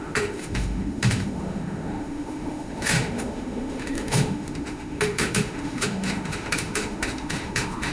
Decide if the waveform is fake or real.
fake